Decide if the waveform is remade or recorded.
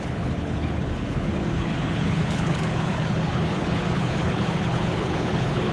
remade